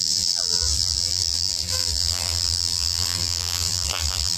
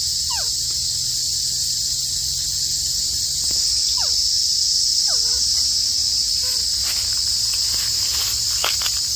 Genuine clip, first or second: second